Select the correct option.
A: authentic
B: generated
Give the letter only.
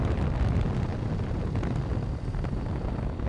A